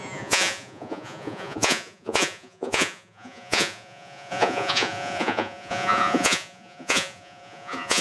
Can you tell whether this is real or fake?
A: fake